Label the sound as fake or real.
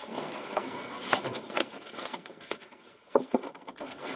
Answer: fake